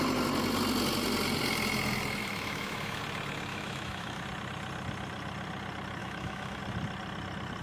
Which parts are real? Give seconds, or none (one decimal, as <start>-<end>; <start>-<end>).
0.0-2.2; 3.0-3.5; 4.2-6.0; 6.6-7.6